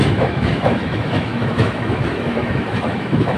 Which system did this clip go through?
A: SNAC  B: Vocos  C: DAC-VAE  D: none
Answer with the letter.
C